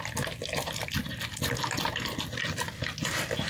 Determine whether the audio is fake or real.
real